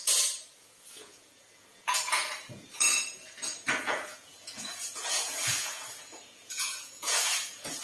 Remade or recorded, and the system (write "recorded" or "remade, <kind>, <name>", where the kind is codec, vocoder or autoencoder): remade, vocoder, Vocos